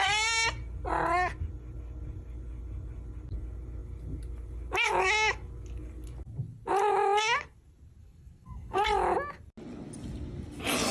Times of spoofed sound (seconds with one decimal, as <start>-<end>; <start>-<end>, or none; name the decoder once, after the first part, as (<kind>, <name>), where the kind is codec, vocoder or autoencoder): 8.0-8.8 (codec, SNAC)